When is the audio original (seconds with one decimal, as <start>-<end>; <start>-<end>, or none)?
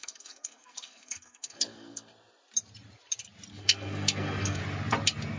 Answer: 2.1-3.5; 4.6-5.4